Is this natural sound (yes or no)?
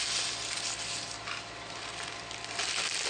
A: yes